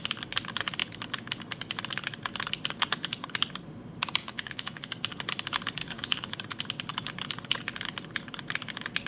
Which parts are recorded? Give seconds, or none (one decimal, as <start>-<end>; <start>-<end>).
0.0-4.2; 4.9-5.8; 6.3-9.1